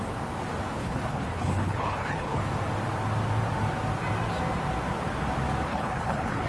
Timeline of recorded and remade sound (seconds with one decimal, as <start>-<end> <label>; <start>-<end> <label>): 0.0-0.8 recorded; 0.8-2.4 remade; 2.4-5.7 recorded; 5.7-6.5 remade